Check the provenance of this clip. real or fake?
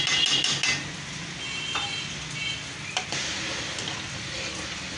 real